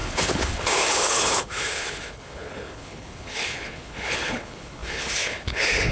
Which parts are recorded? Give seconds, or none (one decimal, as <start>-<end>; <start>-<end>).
none

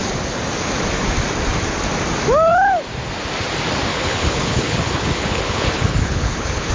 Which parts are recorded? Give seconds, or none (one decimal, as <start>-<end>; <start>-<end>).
0.0-3.9

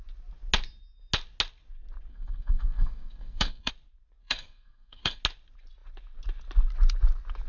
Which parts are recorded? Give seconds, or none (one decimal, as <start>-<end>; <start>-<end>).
0.0-2.1; 3.7-4.2; 5.2-7.5

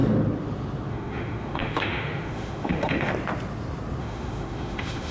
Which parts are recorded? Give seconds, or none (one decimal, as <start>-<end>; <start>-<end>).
0.0-0.9; 3.1-4.0

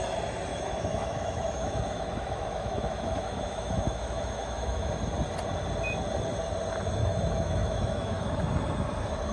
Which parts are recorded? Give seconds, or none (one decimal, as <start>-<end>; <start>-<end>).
0.0-0.5; 4.9-7.0; 8.4-9.3

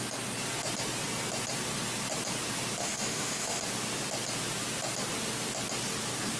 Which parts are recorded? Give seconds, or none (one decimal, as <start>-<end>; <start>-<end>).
0.0-2.8; 3.6-6.4